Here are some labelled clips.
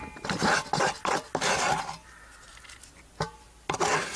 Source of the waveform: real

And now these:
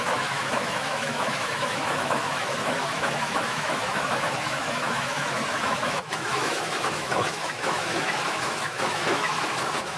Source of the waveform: fake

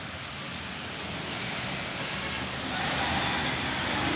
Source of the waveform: real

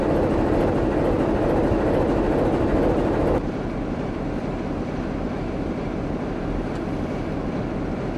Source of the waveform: real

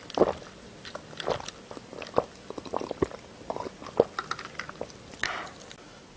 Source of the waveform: real